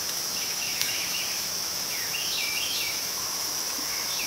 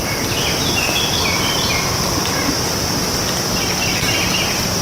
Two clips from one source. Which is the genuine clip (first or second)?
second